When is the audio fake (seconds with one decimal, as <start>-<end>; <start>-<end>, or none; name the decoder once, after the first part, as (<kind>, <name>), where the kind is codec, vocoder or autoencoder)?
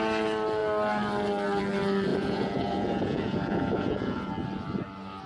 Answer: 2.1-4.3 (vocoder, Vocos)